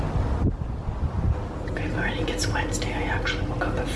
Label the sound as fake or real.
real